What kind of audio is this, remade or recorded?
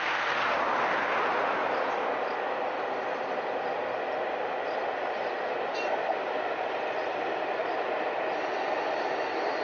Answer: recorded